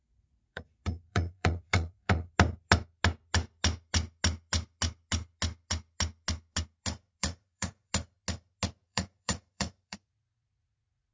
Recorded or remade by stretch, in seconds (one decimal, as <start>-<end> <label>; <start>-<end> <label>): 0.0-2.3 remade; 2.3-7.2 recorded; 7.2-7.9 remade; 7.9-8.8 recorded; 8.8-11.1 remade